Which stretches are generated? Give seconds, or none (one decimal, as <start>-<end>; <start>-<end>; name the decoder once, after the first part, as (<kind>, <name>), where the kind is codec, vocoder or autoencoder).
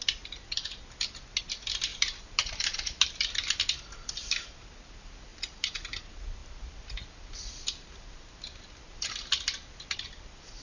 1.9-3.1 (vocoder, BigVGAN v2); 5.3-6.0